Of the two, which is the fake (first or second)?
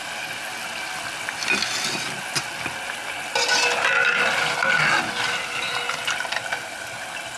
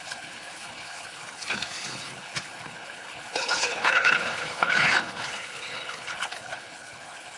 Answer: second